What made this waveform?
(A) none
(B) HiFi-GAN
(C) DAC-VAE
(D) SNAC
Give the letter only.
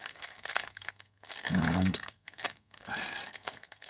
D